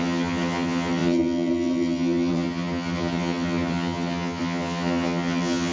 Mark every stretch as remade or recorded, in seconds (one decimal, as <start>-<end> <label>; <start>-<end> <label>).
0.0-5.7 remade